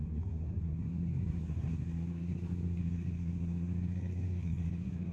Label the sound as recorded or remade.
remade